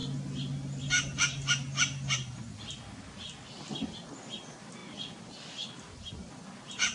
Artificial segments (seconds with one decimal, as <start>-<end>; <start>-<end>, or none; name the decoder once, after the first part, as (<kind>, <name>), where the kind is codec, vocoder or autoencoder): none